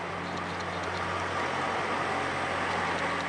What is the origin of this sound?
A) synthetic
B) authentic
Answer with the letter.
B